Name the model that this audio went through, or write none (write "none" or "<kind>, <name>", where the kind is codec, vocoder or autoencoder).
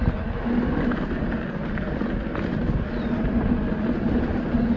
none